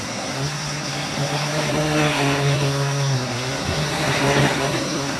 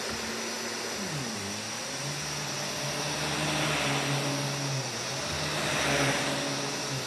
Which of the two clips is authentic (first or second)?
second